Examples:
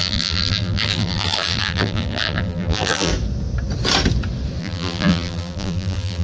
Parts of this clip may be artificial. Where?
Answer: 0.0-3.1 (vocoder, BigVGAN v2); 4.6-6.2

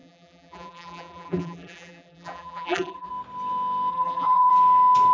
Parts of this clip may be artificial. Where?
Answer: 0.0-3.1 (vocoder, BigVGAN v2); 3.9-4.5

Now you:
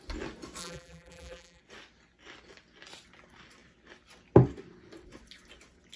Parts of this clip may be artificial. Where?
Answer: 0.6-1.6 (vocoder, BigVGAN v2)